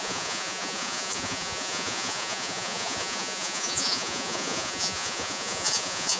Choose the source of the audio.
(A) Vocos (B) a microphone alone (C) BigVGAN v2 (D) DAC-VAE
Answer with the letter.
A